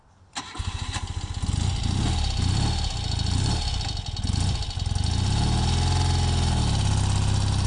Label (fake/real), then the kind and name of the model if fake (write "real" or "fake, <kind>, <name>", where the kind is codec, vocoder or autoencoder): real